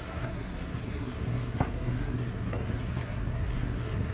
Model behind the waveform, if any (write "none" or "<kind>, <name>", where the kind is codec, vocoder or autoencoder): codec, SNAC